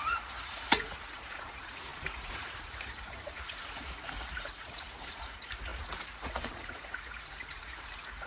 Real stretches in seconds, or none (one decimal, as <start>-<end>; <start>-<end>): none